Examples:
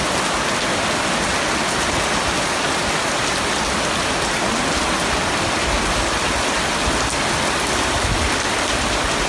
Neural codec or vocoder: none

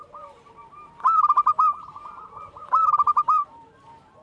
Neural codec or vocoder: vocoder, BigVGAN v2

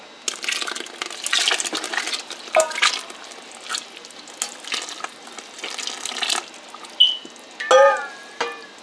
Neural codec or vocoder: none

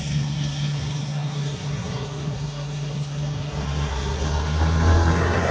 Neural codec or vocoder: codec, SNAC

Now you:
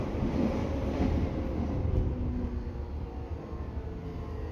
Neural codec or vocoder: none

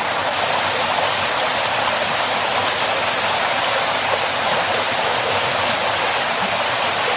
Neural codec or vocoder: none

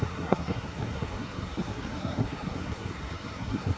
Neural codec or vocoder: codec, SNAC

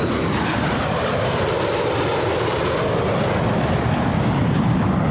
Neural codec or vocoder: none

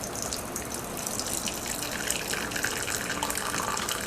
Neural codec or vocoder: none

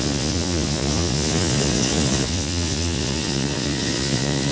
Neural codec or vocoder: vocoder, Vocos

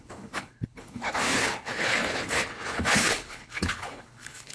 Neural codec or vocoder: codec, HILCodec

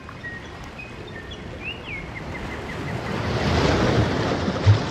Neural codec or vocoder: none